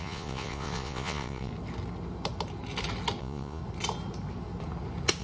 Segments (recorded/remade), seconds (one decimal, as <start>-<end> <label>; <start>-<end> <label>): 0.0-1.5 remade; 1.5-3.2 recorded; 3.2-3.6 remade; 3.6-5.2 recorded